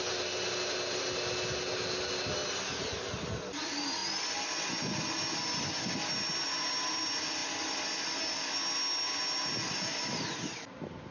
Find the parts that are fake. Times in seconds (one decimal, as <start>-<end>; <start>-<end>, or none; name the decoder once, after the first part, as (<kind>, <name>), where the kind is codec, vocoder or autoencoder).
none